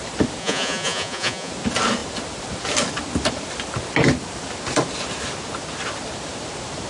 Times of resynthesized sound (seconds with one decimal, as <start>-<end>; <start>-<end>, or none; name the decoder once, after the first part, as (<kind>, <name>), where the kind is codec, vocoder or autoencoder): 0.4-1.5 (vocoder, Vocos)